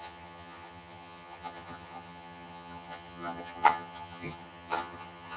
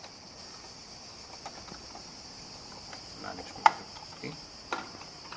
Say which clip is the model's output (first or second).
first